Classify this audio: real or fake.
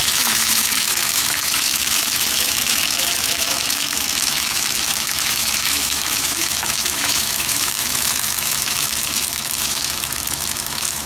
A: fake